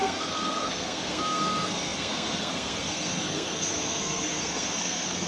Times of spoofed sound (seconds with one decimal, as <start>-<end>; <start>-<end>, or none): 0.0-5.3